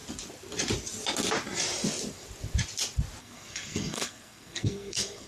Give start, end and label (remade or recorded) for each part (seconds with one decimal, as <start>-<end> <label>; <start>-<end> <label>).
0.0-3.2 recorded; 3.2-5.3 remade